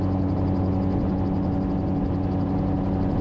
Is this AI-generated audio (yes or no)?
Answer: no